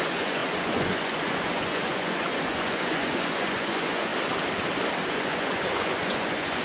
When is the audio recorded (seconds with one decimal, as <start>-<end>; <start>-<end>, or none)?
4.1-5.1